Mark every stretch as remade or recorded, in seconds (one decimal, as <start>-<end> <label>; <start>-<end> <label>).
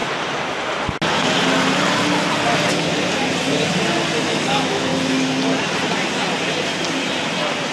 0.0-4.2 recorded; 4.2-4.9 remade; 4.9-7.7 recorded